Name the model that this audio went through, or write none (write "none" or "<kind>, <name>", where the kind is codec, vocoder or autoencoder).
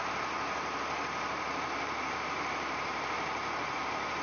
vocoder, BigVGAN v2